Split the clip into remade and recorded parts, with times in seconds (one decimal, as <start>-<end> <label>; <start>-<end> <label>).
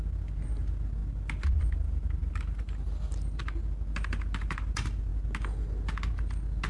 0.0-6.7 recorded